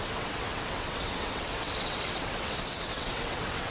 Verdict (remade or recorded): remade